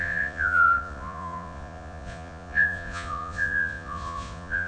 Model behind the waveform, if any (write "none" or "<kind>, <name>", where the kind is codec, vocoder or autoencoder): vocoder, Vocos